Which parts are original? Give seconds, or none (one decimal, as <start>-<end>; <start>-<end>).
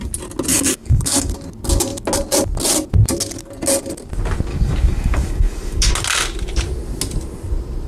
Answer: 0.0-0.5; 1.3-4.5; 5.9-7.9